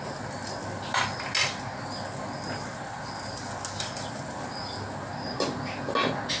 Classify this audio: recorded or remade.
recorded